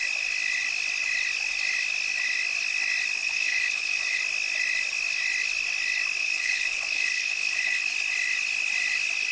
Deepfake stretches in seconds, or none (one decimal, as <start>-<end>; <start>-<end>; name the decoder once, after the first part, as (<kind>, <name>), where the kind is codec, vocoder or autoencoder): 3.2-4.2 (codec, HILCodec); 6.2-7.9